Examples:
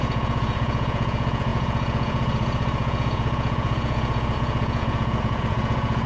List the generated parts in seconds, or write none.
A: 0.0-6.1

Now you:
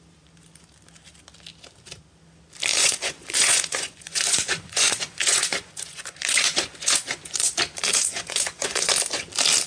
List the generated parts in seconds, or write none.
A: 2.7-7.5; 7.9-8.9

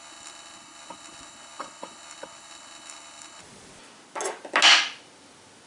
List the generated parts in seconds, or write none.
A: 0.0-3.4

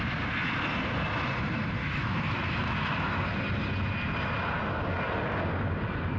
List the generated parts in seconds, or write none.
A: 1.8-3.2

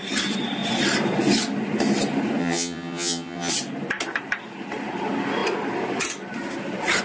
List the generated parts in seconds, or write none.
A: 2.4-3.5